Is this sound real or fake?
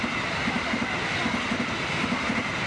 real